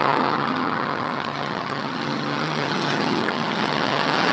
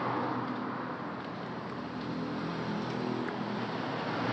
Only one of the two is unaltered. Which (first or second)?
second